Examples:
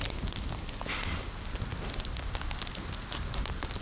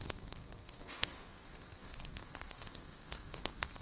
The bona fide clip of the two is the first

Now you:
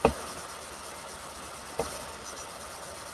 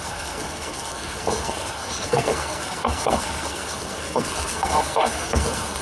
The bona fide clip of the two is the first